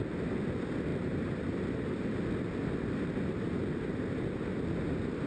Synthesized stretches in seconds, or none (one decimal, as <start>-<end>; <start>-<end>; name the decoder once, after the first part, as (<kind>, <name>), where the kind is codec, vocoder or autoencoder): none